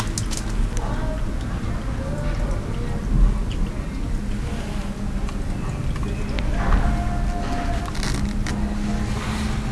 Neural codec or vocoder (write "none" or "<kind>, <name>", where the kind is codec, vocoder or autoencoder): none